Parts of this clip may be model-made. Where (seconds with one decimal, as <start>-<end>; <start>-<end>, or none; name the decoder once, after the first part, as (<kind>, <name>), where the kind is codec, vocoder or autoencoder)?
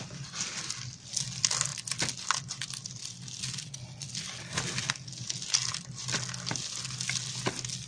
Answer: none